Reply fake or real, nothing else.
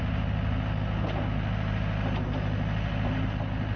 real